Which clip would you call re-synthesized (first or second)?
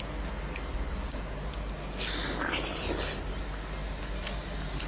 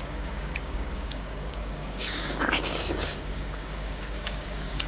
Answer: second